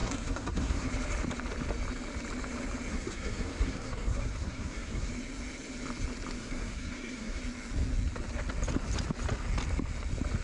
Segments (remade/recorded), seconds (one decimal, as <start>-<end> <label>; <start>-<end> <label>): 0.0-0.9 remade; 0.9-2.9 recorded; 2.9-5.1 remade; 5.1-6.4 recorded; 6.4-7.4 remade; 7.4-10.4 recorded